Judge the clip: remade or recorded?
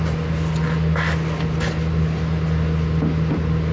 recorded